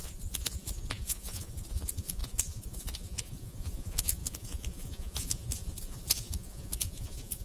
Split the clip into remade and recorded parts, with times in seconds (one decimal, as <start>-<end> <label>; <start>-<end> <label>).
0.0-7.4 remade